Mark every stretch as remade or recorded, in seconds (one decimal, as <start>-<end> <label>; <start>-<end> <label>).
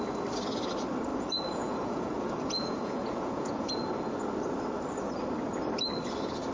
0.0-1.1 recorded; 1.1-3.7 remade; 3.7-6.5 recorded